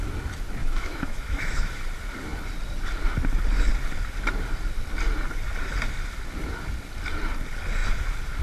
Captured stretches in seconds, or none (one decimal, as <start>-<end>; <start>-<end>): 0.0-0.6; 1.8-8.4